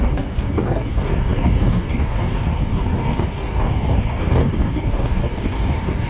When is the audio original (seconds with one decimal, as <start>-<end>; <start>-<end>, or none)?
none